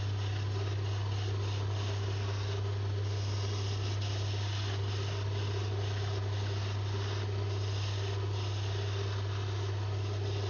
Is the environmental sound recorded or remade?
recorded